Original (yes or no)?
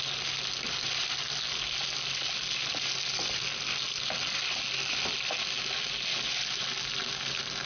yes